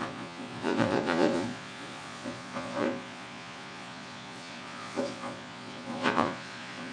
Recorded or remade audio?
remade